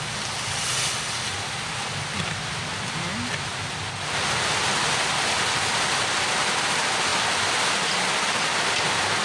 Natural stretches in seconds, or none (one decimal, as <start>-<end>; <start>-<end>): 0.0-9.2